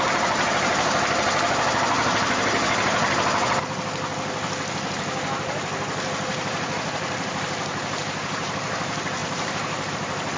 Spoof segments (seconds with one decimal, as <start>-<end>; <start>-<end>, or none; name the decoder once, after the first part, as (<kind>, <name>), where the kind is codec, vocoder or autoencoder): 6.3-8.5 (vocoder, BigVGAN v2); 9.2-9.9